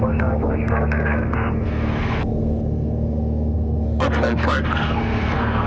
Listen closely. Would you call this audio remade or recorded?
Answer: remade